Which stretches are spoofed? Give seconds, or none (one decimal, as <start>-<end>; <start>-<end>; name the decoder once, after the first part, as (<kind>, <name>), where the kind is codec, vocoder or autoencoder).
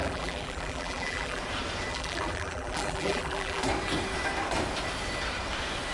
0.0-1.4 (vocoder, BigVGAN v2); 1.9-3.6